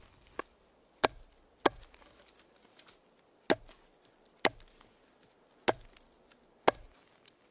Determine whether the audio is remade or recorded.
recorded